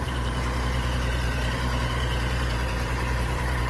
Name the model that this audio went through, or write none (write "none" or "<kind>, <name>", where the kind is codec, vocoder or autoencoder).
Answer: vocoder, BigVGAN v2